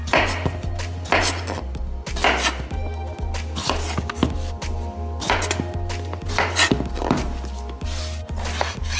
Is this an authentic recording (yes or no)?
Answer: yes